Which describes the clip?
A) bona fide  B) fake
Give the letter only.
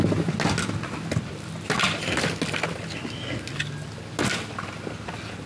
A